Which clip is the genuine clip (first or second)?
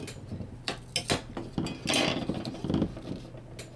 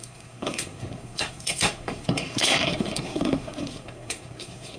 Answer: first